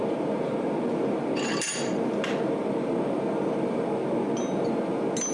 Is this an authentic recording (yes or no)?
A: yes